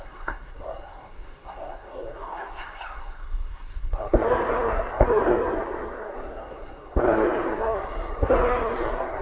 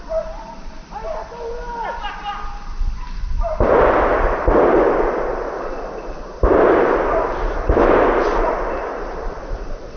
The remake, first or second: first